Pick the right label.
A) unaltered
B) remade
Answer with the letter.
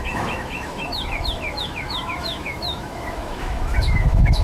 B